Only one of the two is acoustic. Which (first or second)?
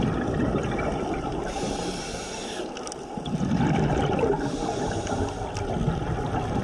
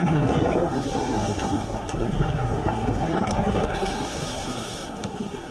first